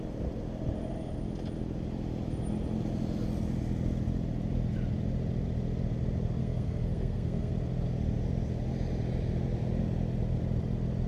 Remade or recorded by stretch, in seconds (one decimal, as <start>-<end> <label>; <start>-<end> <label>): 0.0-6.4 recorded; 6.4-7.5 remade; 7.5-11.1 recorded